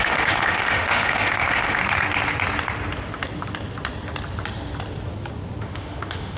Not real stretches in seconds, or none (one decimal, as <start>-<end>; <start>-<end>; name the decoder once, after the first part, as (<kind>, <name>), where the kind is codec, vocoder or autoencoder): 0.0-1.8 (autoencoder, DAC-VAE); 5.6-6.4